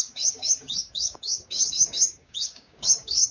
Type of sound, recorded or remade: remade